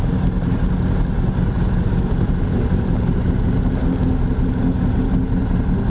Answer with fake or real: real